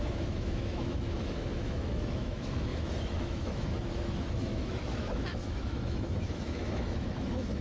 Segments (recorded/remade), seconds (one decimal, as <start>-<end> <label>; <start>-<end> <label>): 0.0-7.6 remade